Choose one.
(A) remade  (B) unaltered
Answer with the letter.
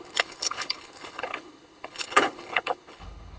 A